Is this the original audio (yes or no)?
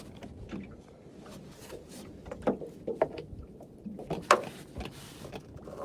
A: yes